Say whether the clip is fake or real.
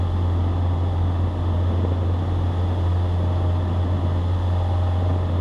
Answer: real